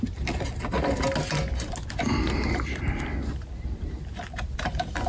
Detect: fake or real real